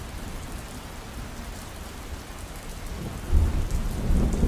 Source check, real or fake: real